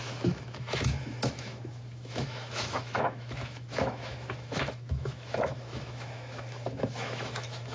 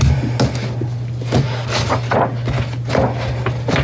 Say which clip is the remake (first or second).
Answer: first